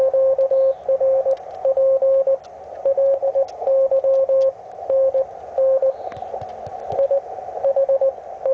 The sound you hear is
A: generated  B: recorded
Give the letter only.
B